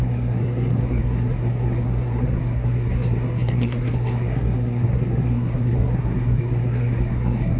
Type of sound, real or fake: fake